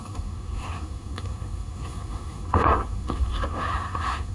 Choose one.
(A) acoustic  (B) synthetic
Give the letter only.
B